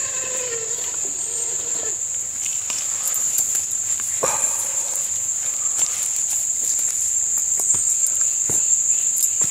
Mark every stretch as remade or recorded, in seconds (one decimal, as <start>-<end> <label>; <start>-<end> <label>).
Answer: 0.0-9.5 remade